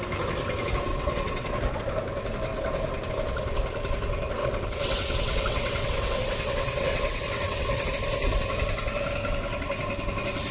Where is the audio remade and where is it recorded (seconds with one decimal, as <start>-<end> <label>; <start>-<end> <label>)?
0.0-0.9 recorded; 0.9-1.8 remade; 1.8-4.4 recorded; 4.4-7.9 remade; 7.9-10.5 recorded